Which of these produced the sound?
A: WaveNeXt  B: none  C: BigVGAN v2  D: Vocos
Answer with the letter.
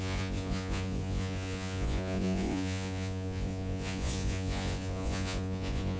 D